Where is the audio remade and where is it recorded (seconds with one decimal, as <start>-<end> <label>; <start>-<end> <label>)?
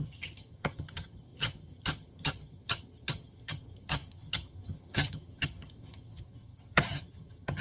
0.0-7.6 remade